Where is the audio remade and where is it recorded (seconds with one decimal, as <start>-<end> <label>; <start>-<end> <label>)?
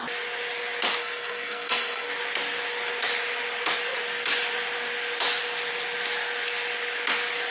0.0-1.0 recorded; 1.0-2.1 remade; 2.1-7.5 recorded